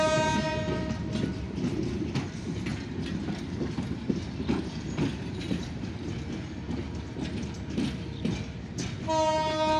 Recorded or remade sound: recorded